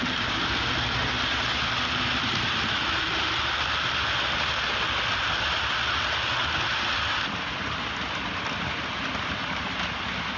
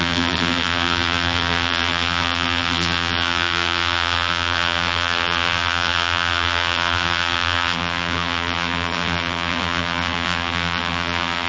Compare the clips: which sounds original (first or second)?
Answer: first